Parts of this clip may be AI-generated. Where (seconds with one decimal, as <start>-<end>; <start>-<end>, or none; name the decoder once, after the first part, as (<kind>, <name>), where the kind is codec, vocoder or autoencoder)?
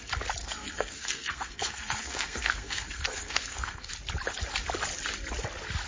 0.4-3.9 (codec, SNAC)